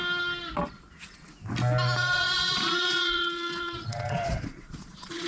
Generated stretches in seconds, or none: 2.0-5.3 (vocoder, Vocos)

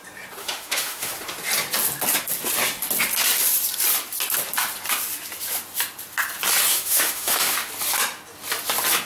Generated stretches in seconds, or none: 0.4-1.1 (autoencoder, DAC-VAE); 6.7-7.7

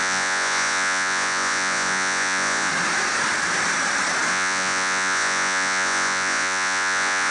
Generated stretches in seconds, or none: 0.0-2.7 (vocoder, Vocos); 4.3-7.3

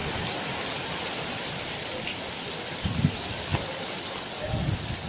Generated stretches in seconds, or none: 0.0-3.5 (vocoder, BigVGAN v2)

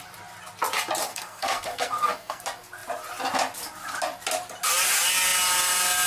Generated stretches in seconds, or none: 1.1-2.4 (codec, SNAC)